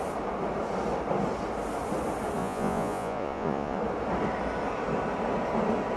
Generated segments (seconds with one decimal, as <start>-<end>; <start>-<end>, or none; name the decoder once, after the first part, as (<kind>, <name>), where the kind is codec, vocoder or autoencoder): 2.4-3.8 (vocoder, Vocos)